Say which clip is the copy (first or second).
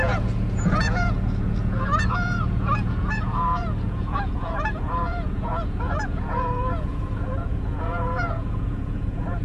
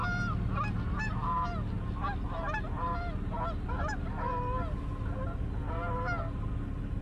first